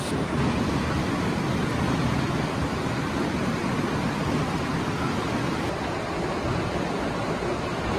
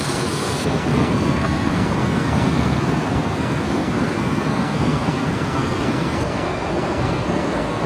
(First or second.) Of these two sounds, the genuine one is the first